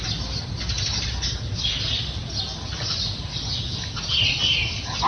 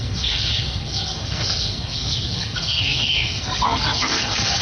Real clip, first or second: first